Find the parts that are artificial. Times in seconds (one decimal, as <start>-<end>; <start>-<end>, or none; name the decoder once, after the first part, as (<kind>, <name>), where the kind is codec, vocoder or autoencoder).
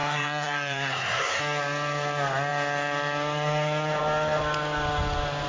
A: 0.0-1.4 (codec, SNAC)